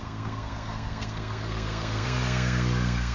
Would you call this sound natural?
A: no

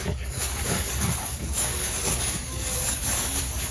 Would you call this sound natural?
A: no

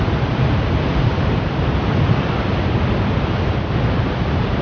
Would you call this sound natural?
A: no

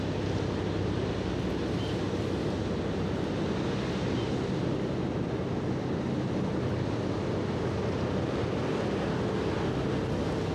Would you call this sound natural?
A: yes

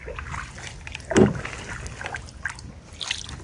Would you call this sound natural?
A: yes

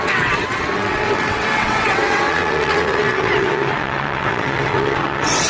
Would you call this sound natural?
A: no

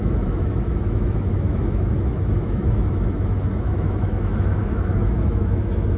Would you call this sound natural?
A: no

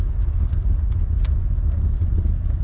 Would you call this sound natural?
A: yes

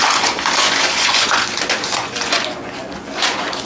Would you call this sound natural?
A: no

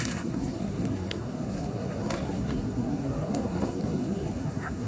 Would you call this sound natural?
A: no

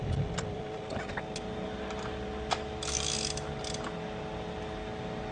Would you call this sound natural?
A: yes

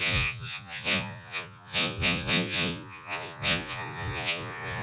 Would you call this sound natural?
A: no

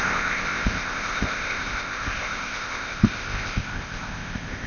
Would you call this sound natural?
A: no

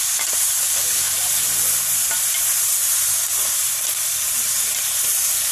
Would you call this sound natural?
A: yes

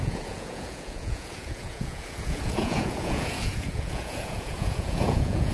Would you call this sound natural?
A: no